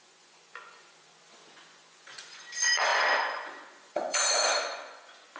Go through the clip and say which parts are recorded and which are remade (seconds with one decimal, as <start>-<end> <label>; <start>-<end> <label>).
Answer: 0.0-5.4 remade